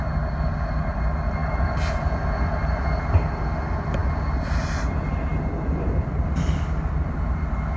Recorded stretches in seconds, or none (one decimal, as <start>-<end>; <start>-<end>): 0.0-7.8